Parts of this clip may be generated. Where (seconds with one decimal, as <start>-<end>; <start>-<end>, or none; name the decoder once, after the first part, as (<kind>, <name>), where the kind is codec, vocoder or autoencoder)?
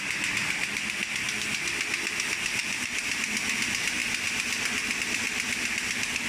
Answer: 2.6-3.2 (vocoder, BigVGAN v2)